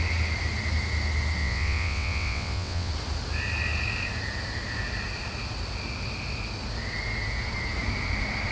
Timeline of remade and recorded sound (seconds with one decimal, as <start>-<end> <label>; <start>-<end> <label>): 0.0-1.4 recorded; 1.4-2.9 remade; 2.9-8.5 recorded